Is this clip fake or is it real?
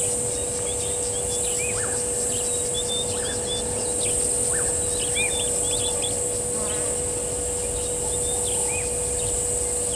real